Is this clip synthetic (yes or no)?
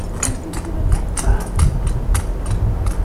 no